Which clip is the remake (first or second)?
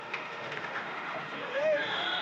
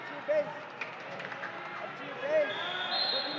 first